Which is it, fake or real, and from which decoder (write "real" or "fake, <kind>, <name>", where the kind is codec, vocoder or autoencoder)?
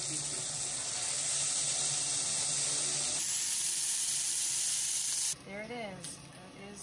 real